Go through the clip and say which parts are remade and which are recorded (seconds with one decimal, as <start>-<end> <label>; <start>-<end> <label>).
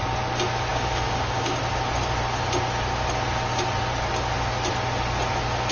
0.0-0.7 recorded; 0.7-1.6 remade; 1.6-5.7 recorded